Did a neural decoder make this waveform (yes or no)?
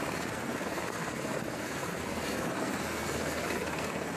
yes